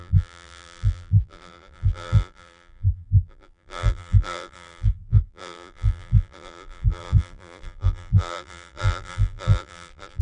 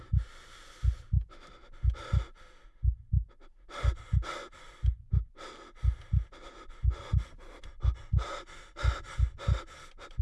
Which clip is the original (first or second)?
second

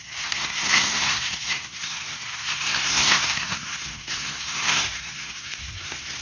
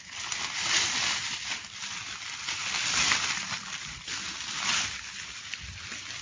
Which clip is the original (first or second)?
second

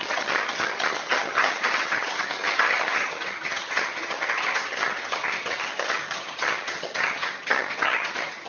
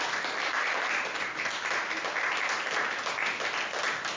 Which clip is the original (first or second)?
second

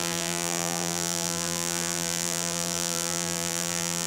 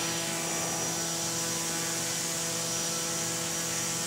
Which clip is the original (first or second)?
second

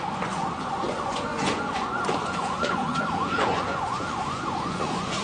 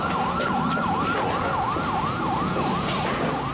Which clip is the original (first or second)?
second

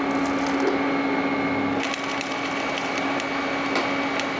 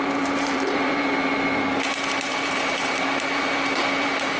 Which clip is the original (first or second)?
first